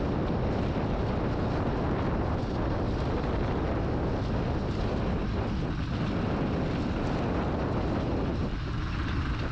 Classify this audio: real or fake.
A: real